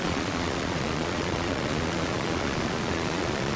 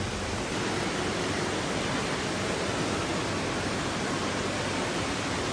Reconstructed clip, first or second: first